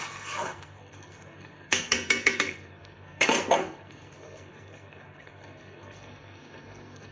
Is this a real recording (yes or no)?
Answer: no